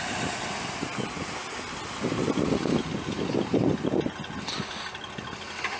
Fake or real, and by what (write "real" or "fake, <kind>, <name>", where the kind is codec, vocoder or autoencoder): real